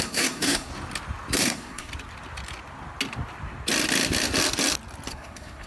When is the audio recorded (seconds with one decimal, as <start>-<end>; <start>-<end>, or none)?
0.7-1.4; 1.9-5.1